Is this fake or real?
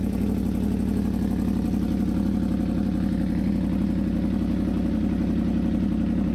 real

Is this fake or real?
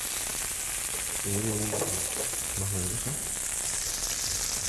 real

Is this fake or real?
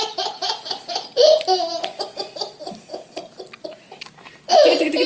real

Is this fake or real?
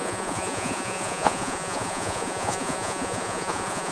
fake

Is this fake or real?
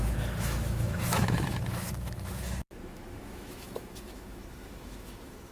fake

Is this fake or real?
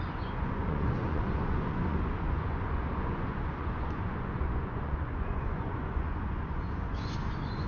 fake